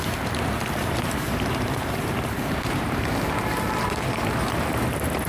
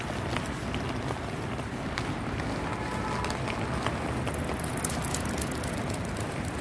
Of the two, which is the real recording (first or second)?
second